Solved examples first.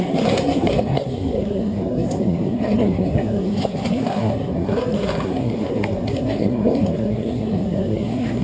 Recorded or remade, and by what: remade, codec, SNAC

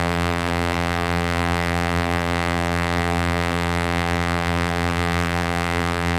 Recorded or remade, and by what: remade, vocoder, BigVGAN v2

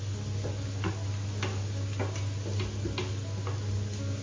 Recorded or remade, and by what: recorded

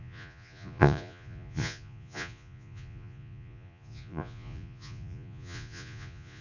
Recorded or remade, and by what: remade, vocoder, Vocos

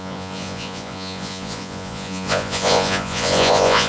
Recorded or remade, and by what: remade, vocoder, Vocos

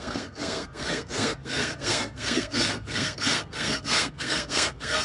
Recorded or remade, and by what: remade, codec, SNAC